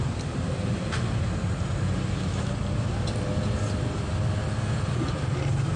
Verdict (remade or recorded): recorded